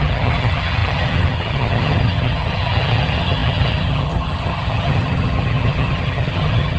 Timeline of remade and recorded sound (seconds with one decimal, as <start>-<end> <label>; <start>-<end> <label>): 0.0-6.8 remade